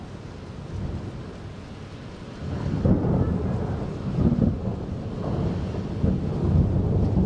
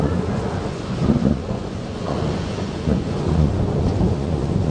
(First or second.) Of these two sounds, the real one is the first